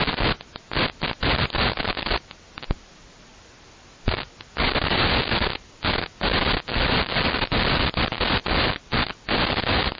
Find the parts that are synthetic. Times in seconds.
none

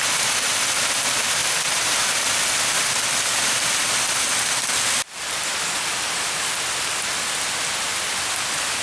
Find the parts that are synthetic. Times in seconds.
none

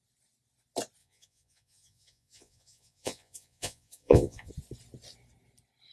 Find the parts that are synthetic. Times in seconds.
1.0-4.5 (vocoder, Vocos)

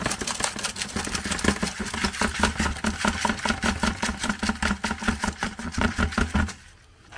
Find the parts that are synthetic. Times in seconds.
5.0-6.0 (vocoder, Vocos)